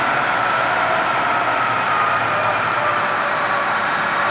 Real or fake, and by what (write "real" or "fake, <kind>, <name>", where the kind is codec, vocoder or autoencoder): fake, vocoder, BigVGAN v2